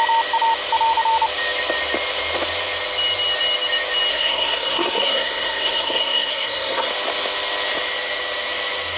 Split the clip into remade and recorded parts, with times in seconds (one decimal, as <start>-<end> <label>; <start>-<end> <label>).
0.0-4.1 recorded; 4.1-6.9 remade; 6.9-9.0 recorded